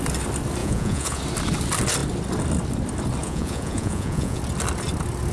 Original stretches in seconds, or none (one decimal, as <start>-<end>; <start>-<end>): 0.0-0.6; 1.2-3.2; 4.4-5.3